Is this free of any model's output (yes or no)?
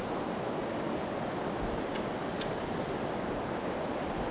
yes